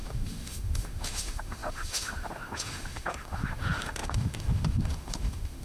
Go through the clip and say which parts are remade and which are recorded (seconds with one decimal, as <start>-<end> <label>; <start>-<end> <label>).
0.0-5.6 remade